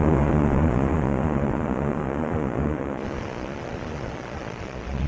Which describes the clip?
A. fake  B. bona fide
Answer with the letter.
A